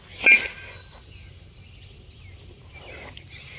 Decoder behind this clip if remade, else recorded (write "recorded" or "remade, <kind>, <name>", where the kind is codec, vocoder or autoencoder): recorded